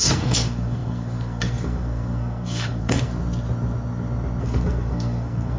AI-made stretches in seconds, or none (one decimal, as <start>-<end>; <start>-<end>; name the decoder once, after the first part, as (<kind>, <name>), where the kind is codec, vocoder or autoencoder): 0.0-3.2 (codec, SNAC); 4.4-5.6